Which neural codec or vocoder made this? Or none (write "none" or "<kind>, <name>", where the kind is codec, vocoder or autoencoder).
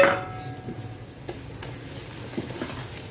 none